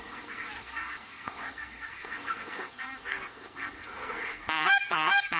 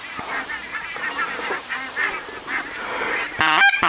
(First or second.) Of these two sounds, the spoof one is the first